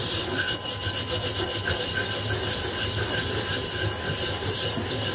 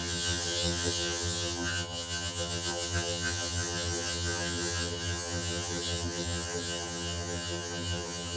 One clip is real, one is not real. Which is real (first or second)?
first